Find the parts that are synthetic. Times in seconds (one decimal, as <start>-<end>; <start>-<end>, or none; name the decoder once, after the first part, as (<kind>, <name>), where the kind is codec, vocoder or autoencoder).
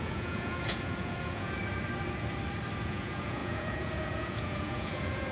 0.0-1.6 (vocoder, Vocos); 2.8-5.3